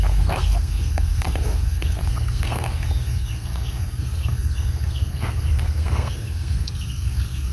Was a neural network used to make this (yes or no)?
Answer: yes